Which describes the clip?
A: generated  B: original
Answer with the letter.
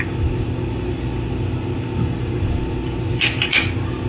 B